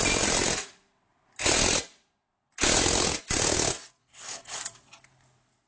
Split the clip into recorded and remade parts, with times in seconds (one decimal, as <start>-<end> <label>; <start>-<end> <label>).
0.0-4.0 recorded; 4.0-4.6 remade; 4.6-5.7 recorded